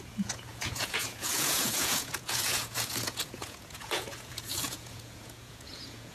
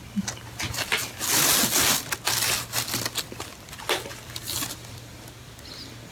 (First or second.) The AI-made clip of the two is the first